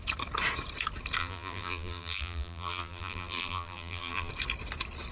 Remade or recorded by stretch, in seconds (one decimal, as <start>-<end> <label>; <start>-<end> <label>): 0.0-1.2 recorded; 1.2-4.3 remade; 4.3-5.1 recorded